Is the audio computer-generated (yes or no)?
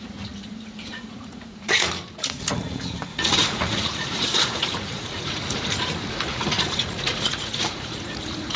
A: yes